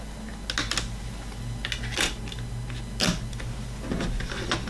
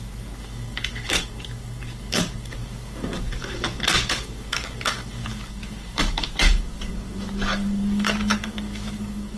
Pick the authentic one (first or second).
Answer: first